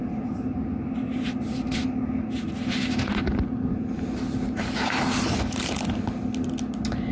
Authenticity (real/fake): real